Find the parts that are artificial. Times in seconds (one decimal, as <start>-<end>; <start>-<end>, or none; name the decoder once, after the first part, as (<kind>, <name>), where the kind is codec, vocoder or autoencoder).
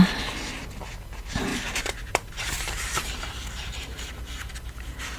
1.5-4.1 (vocoder, BigVGAN v2)